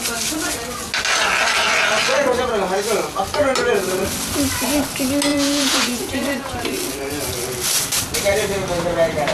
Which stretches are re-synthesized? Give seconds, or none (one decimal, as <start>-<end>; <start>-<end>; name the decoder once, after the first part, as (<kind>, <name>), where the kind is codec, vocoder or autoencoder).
5.3-6.6 (vocoder, Vocos)